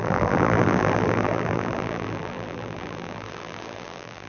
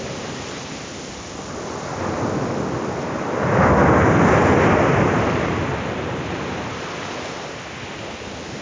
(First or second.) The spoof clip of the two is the first